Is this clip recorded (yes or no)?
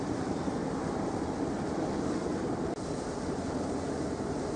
yes